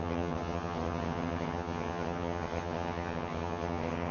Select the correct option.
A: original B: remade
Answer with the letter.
B